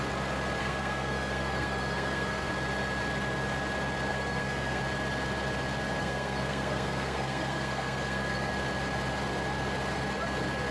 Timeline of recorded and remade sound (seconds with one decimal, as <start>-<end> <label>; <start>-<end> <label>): 0.0-0.6 recorded; 0.6-2.5 remade; 2.5-4.1 recorded; 4.1-4.8 remade; 4.8-6.0 recorded; 6.0-8.5 remade; 8.5-10.7 recorded